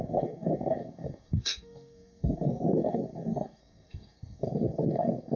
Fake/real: fake